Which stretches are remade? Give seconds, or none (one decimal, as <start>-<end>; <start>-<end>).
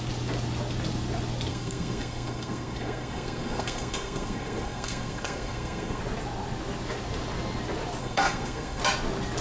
1.5-6.0; 8.0-8.8